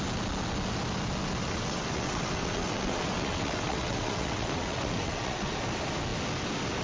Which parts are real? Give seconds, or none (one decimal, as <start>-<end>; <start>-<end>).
0.0-1.4; 5.5-6.8

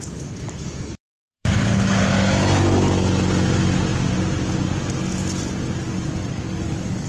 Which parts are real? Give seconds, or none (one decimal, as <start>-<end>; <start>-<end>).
2.0-6.3

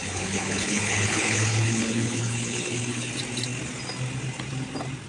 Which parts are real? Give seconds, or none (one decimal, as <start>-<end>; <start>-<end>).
3.1-5.1

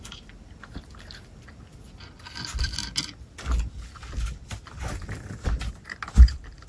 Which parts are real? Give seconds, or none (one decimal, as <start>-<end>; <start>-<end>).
0.0-6.7

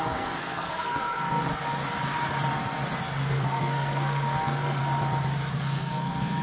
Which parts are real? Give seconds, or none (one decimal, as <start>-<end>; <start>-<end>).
1.5-3.3; 4.8-5.5

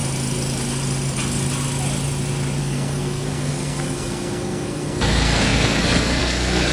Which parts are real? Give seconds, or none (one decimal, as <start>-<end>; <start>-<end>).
0.0-2.6

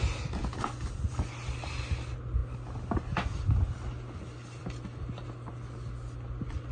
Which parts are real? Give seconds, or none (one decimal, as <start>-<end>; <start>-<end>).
0.0-6.7

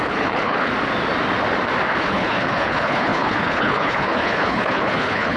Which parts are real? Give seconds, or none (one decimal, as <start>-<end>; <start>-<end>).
0.7-2.0